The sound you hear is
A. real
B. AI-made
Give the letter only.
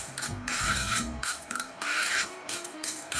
B